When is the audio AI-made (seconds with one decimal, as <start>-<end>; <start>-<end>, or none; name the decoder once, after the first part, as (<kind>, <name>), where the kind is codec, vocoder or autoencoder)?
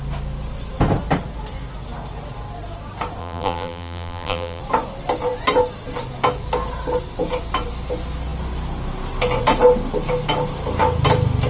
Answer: 3.2-4.6 (vocoder, BigVGAN v2)